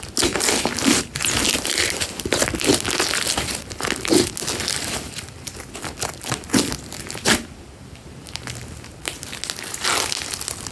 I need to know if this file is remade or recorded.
recorded